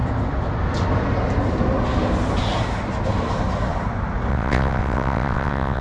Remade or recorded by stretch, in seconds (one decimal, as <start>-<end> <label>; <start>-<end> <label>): 0.0-4.3 recorded; 4.3-5.8 remade